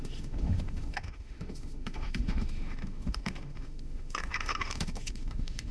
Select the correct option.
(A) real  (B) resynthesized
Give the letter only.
B